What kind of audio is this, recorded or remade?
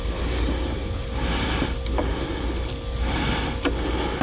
recorded